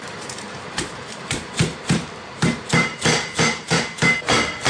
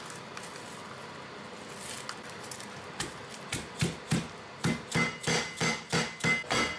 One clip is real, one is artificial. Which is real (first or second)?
second